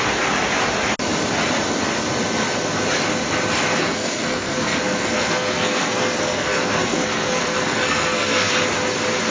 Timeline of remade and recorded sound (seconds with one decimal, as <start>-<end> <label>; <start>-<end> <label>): 0.0-3.8 recorded; 3.8-8.5 remade; 8.5-9.3 recorded